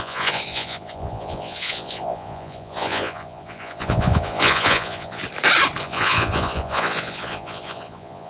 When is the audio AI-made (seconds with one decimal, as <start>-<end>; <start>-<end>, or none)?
0.0-5.2; 5.8-8.3